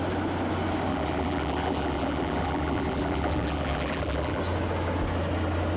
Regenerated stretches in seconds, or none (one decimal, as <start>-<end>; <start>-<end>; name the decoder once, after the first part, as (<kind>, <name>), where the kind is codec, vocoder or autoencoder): 0.9-4.4 (vocoder, BigVGAN v2)